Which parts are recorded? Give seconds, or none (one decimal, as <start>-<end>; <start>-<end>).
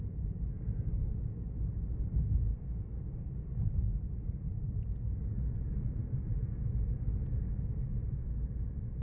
0.0-2.5; 3.3-9.0